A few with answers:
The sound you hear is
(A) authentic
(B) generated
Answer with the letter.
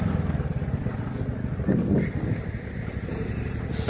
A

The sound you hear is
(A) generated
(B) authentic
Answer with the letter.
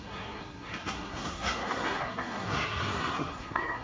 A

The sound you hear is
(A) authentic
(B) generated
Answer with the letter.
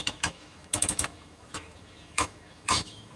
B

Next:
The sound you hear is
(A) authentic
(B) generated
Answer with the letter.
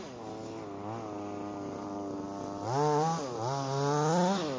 A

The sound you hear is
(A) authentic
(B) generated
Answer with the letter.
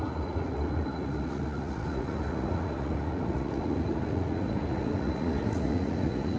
B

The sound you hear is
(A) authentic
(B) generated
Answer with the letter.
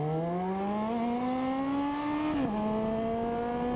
A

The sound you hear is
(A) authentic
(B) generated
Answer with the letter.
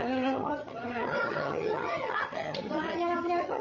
B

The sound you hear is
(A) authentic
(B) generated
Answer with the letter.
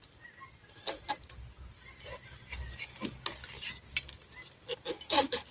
A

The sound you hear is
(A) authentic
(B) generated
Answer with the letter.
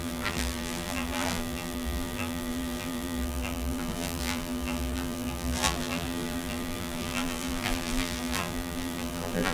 B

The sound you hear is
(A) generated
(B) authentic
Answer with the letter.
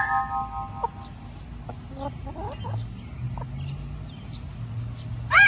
B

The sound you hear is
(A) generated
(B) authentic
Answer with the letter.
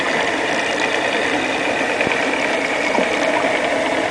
B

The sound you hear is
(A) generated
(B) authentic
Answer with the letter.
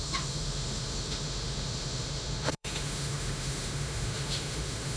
A